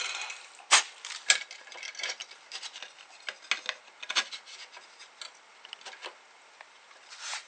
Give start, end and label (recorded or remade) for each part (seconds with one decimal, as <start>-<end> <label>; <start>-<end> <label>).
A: 0.0-2.2 remade; 2.2-6.6 recorded; 6.6-7.5 remade